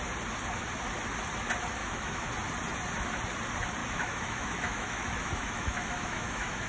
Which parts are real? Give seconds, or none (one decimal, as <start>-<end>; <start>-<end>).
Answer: 0.0-1.8; 2.3-3.8